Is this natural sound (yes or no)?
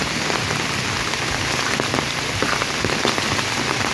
yes